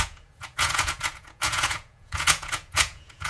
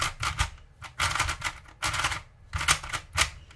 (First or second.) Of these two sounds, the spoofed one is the first